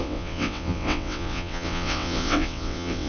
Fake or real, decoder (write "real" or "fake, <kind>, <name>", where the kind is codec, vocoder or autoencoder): fake, vocoder, WaveNeXt